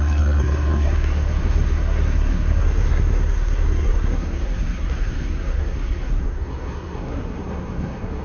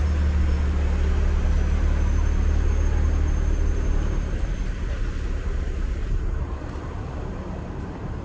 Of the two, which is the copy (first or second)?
first